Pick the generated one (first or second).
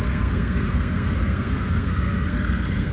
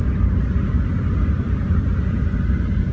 first